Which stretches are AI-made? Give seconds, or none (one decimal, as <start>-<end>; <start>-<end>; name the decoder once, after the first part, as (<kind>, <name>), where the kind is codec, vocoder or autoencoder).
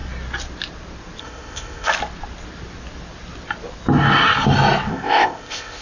1.2-1.9 (codec, ZipCodec); 4.9-5.8